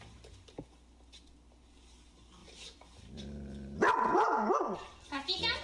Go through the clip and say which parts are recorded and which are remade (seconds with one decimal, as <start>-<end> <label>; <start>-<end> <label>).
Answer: 0.0-2.4 recorded; 2.4-4.5 remade; 4.5-5.6 recorded